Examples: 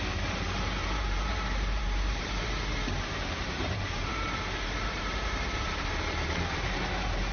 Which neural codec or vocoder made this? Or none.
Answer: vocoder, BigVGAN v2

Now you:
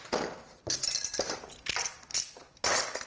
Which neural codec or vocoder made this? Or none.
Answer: none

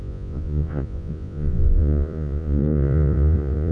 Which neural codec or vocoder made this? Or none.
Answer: vocoder, Vocos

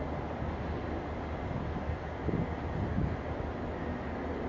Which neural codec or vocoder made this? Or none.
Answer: none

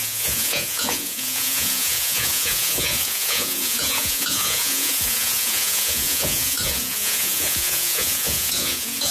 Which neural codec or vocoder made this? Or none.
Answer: vocoder, Vocos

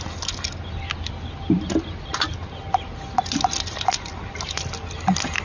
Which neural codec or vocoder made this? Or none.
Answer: none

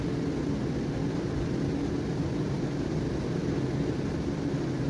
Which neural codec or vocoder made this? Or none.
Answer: none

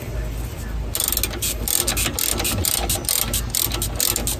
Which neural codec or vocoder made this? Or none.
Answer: none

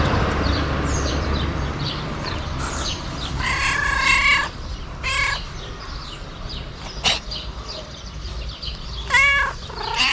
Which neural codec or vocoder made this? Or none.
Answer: vocoder, BigVGAN v2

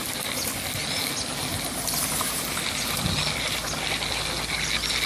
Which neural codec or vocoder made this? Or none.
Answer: none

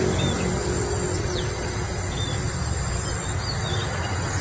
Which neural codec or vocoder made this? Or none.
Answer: vocoder, BigVGAN v2